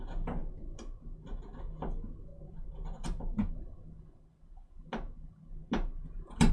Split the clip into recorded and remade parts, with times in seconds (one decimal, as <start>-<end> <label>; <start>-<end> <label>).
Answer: 0.0-2.3 recorded; 2.3-3.5 remade; 3.5-5.6 recorded; 5.6-6.5 remade